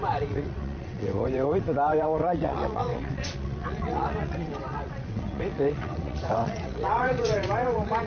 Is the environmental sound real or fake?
fake